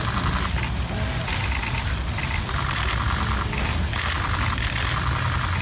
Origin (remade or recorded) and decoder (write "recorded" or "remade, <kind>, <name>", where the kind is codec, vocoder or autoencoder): recorded